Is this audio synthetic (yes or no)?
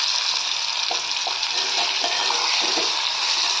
no